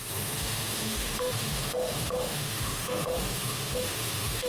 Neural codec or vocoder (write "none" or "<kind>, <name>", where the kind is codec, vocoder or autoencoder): autoencoder, DAC-VAE